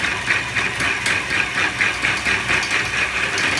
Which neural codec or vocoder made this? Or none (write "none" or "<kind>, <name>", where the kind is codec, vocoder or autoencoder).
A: none